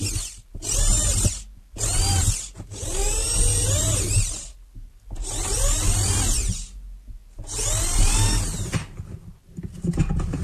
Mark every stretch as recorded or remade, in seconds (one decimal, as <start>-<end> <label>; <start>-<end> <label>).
0.0-10.4 recorded